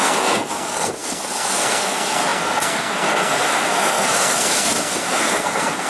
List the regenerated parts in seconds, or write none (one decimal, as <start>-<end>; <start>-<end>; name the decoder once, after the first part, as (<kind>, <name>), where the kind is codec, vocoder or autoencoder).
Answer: 0.0-5.9 (codec, SNAC)